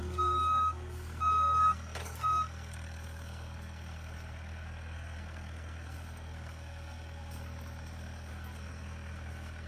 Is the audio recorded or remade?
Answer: remade